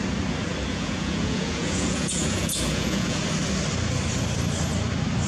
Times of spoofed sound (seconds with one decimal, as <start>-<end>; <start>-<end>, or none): 0.7-3.2

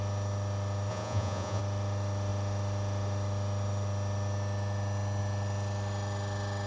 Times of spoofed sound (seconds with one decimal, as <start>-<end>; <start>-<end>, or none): 0.9-1.6